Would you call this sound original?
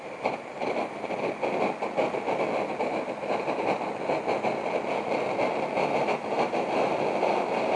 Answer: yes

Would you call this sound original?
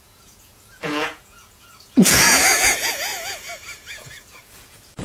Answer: no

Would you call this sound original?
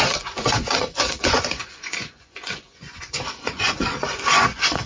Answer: no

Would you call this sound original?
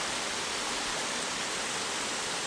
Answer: yes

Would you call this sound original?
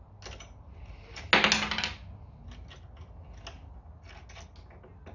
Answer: yes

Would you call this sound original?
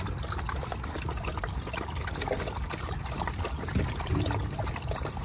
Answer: yes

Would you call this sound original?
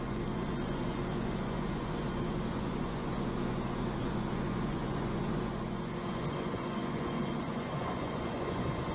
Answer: no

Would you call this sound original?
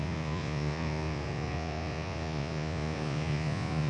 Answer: no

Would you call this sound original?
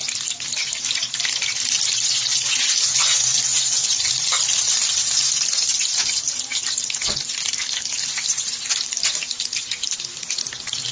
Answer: yes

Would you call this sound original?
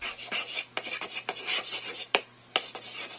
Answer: yes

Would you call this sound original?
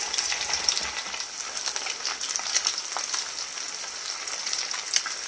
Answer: yes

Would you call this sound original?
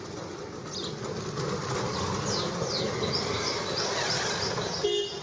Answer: yes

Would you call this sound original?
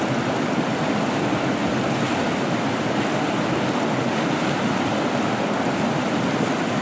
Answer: yes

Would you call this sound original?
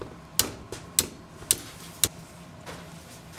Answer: yes